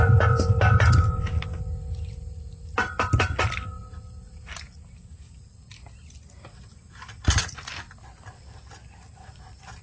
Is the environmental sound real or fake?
real